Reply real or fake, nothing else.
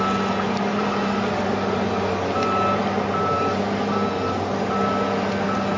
real